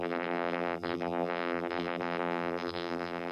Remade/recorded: remade